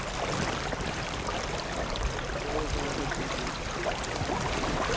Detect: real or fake real